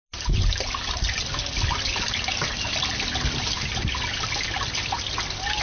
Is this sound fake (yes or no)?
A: no